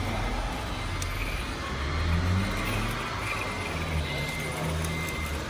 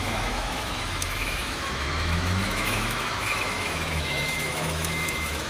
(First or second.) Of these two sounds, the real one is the first